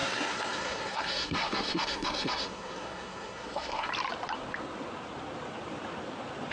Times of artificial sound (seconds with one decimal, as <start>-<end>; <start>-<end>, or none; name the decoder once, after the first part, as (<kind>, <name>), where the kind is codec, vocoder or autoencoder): 0.0-3.9 (codec, SNAC)